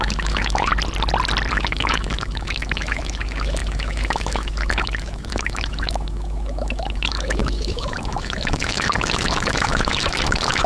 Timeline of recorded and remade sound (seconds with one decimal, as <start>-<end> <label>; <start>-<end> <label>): 0.0-0.7 remade; 0.7-1.5 recorded; 1.5-10.7 remade